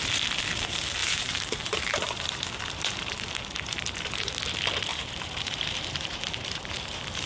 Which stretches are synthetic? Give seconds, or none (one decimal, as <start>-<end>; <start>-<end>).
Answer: 1.0-4.3; 4.9-7.3